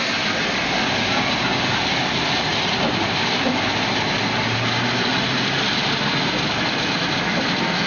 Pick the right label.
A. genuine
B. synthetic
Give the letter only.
A